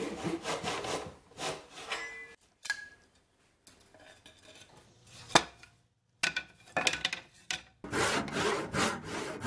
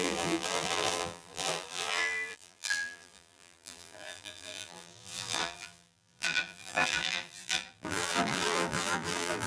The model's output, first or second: second